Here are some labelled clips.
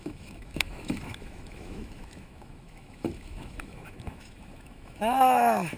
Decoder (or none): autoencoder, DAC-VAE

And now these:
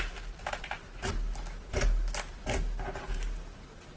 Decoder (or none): none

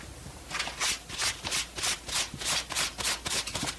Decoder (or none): none